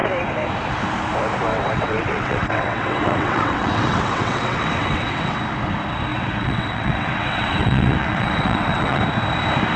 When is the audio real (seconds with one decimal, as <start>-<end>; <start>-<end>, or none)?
0.0-1.5; 5.4-6.1; 9.0-9.8